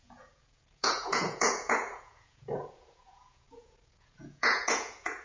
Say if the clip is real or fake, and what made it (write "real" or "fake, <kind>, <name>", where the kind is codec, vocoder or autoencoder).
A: fake, vocoder, Vocos